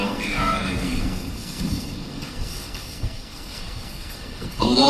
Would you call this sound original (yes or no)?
no